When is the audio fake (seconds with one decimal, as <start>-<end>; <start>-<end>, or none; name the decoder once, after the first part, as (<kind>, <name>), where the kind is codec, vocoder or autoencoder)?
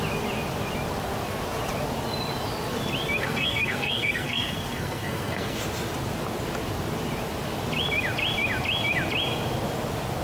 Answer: 3.2-5.6 (codec, SNAC)